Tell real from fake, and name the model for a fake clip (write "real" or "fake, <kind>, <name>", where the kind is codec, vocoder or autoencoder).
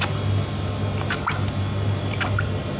real